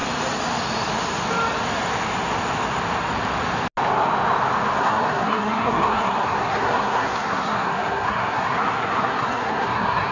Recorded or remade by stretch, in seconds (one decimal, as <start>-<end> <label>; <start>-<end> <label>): 0.0-4.8 recorded; 4.8-10.1 remade